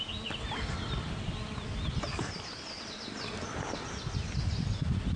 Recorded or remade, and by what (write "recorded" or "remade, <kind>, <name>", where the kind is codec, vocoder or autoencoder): recorded